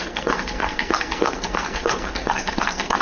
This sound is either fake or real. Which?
fake